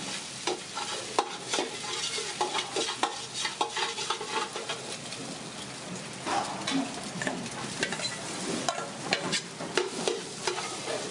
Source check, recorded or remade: recorded